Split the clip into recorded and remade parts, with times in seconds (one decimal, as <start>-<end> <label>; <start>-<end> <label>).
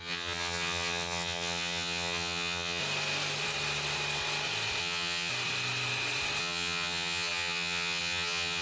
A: 0.0-2.8 remade; 2.8-4.8 recorded; 4.8-5.3 remade; 5.3-6.4 recorded; 6.4-8.6 remade